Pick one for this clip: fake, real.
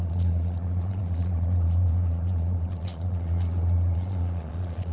fake